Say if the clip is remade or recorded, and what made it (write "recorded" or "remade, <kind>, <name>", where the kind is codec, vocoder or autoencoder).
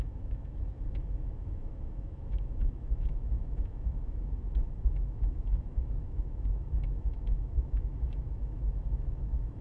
remade, autoencoder, DAC-VAE